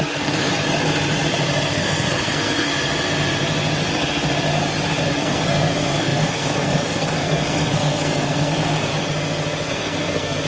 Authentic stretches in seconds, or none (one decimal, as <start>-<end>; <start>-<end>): 0.5-1.7; 2.7-5.1; 8.9-9.7